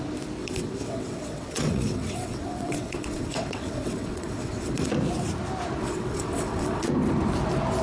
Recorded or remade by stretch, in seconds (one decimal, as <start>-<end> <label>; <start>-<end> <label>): 0.0-0.4 recorded; 0.4-4.9 remade; 4.9-5.8 recorded; 5.8-6.9 remade; 6.9-7.8 recorded